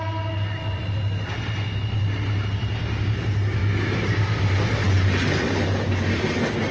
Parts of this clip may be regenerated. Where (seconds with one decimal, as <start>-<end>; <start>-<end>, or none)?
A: none